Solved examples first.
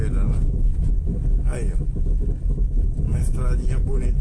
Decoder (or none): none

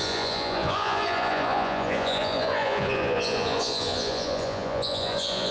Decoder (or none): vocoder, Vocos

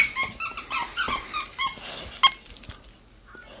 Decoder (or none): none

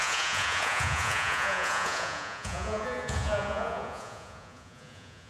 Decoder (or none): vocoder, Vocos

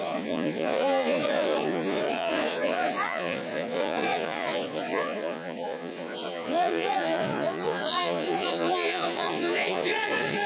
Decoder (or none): vocoder, Vocos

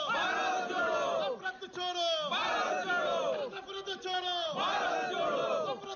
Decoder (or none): none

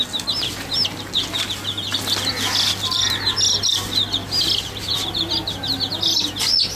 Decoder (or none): none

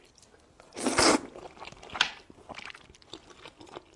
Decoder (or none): none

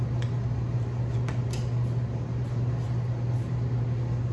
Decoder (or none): none